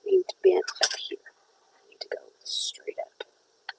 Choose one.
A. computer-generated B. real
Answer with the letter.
B